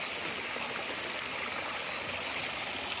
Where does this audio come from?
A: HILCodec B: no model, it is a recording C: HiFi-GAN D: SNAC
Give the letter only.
B